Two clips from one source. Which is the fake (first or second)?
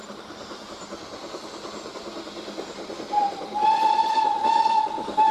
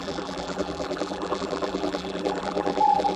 second